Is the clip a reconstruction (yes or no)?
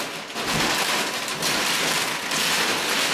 no